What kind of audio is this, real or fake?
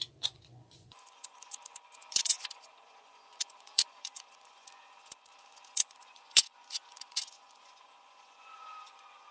fake